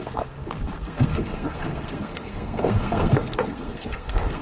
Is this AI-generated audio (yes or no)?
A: yes